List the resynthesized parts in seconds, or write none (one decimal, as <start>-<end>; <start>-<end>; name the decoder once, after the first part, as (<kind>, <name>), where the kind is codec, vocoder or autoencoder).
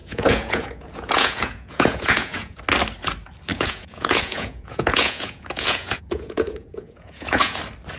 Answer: 0.0-2.6 (vocoder, Vocos); 3.5-7.6